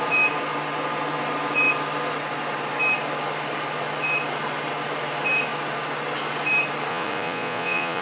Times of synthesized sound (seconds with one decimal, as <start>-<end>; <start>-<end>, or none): 6.9-8.0